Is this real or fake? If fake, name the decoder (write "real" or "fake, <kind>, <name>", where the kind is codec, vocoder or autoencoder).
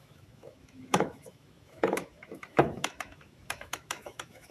fake, autoencoder, DAC-VAE